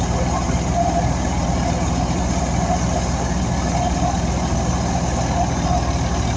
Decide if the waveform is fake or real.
real